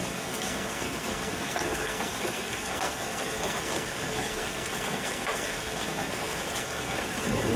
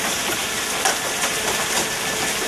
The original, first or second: second